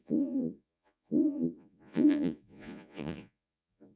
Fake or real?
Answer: fake